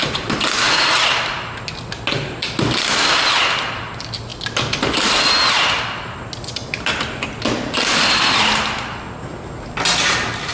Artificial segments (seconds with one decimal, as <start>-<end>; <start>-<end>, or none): none